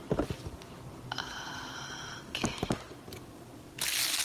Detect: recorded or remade recorded